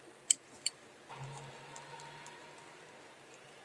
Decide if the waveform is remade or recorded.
recorded